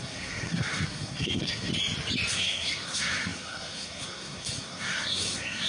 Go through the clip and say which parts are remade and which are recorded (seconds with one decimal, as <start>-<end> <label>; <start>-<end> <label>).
0.0-1.7 remade; 1.7-2.3 recorded; 2.3-5.7 remade